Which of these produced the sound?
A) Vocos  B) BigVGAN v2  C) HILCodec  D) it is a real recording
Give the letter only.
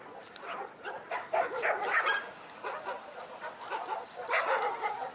D